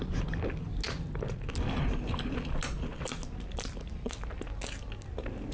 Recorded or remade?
recorded